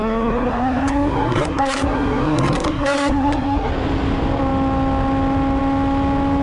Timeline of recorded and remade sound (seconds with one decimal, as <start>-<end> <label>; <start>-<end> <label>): 0.0-3.7 remade; 3.7-6.4 recorded